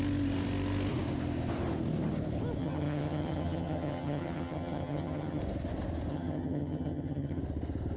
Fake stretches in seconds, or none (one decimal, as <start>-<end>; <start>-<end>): 2.6-5.4; 6.1-7.4